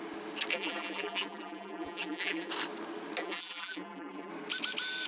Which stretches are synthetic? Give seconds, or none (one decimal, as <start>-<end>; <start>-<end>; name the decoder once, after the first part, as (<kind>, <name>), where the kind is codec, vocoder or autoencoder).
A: 0.5-2.5 (vocoder, BigVGAN v2); 3.2-4.3